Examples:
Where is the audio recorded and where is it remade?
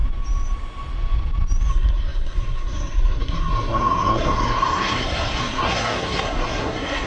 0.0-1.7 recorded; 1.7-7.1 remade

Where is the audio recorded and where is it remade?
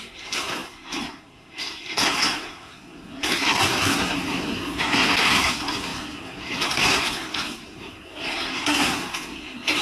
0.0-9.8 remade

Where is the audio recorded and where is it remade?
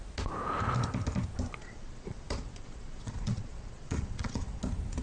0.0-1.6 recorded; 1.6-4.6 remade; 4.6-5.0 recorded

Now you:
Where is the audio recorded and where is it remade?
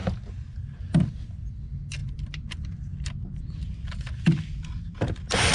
0.0-0.8 remade; 0.8-2.0 recorded; 2.0-2.6 remade; 2.6-5.5 recorded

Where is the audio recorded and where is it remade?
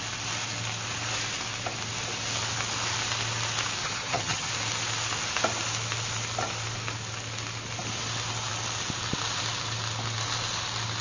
0.0-3.8 recorded; 3.8-4.5 remade; 4.5-11.0 recorded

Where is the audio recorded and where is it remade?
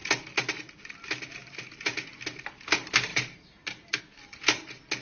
0.0-3.1 recorded; 3.1-4.0 remade; 4.0-5.0 recorded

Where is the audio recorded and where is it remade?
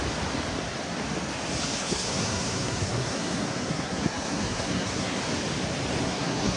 0.0-1.8 recorded; 1.8-5.2 remade; 5.2-6.0 recorded; 6.0-6.6 remade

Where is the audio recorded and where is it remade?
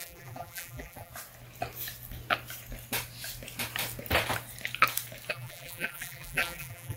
0.0-1.1 remade; 1.1-5.3 recorded; 5.3-7.0 remade